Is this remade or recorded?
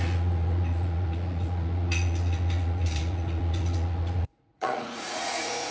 remade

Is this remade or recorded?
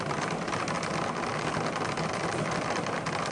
recorded